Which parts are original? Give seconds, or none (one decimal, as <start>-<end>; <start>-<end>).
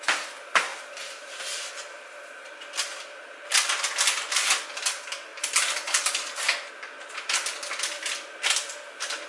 0.0-9.3